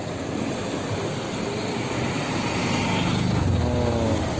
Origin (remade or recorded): recorded